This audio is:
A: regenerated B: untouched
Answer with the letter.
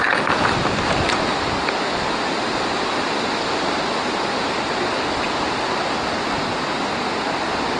B